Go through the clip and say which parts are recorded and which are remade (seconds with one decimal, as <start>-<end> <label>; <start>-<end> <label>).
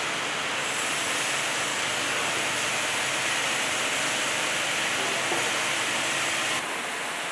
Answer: 0.0-1.7 recorded; 1.7-2.3 remade; 2.3-7.3 recorded